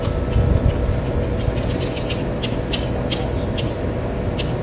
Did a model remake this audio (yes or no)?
no